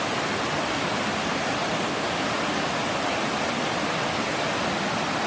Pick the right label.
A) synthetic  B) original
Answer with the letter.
B